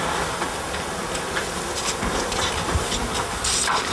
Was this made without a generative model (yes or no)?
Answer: yes